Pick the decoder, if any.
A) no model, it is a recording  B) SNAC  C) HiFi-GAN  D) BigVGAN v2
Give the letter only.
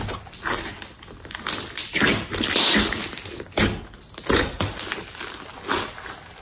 A